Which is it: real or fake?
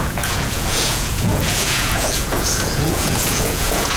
fake